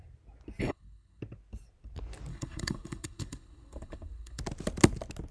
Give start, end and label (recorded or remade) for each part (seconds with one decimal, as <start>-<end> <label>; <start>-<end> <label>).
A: 0.0-0.6 recorded; 0.6-1.2 remade; 1.2-2.3 recorded; 2.3-4.4 remade; 4.4-5.3 recorded